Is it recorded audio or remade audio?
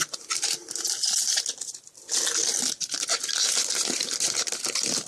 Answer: recorded